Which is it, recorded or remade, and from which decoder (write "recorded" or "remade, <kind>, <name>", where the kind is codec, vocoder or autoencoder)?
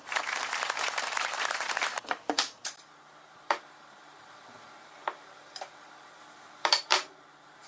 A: remade, vocoder, BigVGAN v2